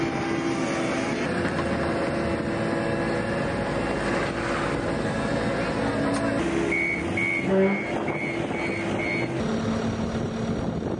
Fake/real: real